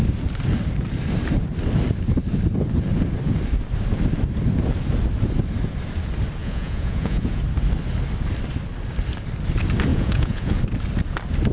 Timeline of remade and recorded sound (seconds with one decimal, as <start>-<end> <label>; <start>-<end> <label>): 0.0-6.4 recorded; 6.4-7.4 remade; 7.4-9.9 recorded; 9.9-10.6 remade; 10.6-11.5 recorded